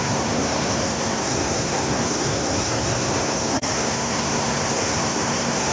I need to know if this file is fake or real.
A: fake